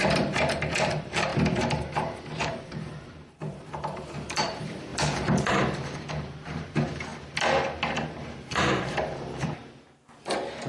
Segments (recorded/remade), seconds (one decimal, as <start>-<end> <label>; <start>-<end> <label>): 0.0-7.1 remade; 7.1-7.9 recorded; 7.9-9.6 remade; 9.6-10.7 recorded